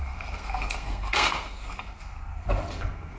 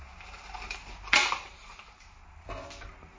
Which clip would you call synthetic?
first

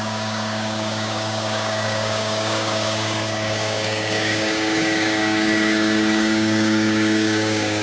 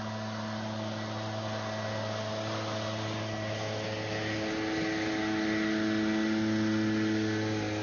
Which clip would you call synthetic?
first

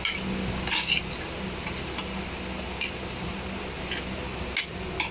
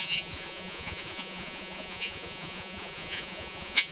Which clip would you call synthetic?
second